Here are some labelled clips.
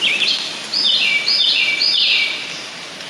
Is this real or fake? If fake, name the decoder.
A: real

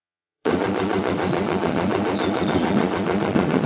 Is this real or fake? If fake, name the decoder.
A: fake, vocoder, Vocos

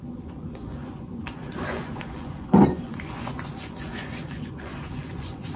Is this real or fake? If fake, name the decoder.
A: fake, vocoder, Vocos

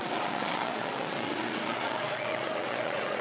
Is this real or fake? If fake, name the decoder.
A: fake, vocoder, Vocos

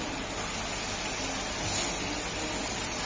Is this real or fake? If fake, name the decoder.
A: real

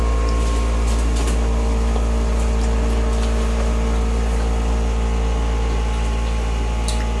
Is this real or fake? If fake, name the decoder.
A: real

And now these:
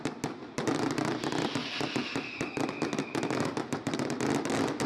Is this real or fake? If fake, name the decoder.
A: real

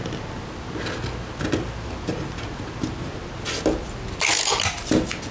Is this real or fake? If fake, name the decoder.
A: real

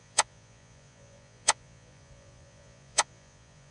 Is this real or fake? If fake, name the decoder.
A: fake, vocoder, Vocos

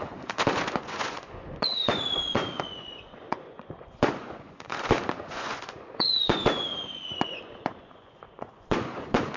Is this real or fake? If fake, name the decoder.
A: fake, vocoder, Vocos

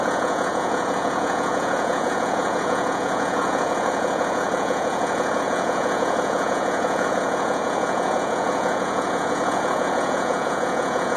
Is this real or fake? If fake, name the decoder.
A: fake, vocoder, Vocos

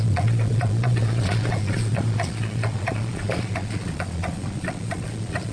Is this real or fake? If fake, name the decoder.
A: fake, vocoder, Vocos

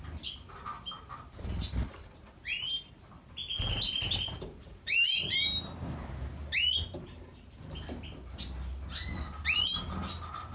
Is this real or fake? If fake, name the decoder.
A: real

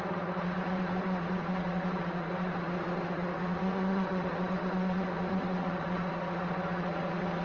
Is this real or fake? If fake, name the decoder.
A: fake, vocoder, Vocos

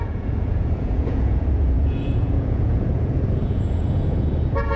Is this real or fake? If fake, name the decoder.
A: fake, vocoder, Vocos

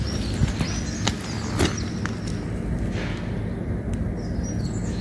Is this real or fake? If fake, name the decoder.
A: real